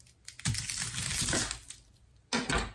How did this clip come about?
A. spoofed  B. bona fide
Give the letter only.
B